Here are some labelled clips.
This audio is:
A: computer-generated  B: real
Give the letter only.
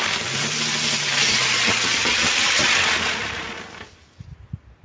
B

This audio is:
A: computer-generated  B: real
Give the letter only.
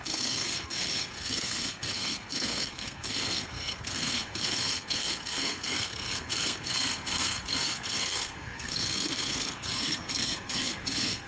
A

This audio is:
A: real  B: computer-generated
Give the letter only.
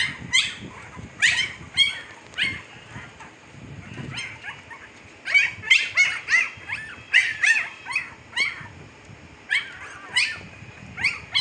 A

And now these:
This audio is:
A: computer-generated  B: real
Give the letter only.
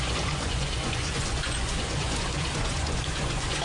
A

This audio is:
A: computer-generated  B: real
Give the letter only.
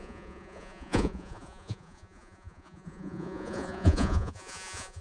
A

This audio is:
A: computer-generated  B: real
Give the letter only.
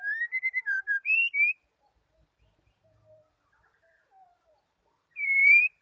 A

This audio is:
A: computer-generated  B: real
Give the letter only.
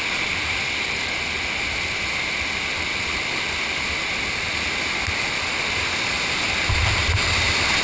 B